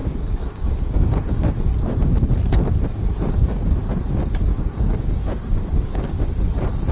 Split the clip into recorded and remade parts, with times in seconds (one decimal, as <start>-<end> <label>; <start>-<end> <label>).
0.0-1.6 remade; 1.6-3.4 recorded; 3.4-3.9 remade; 3.9-4.5 recorded; 4.5-6.2 remade; 6.2-6.9 recorded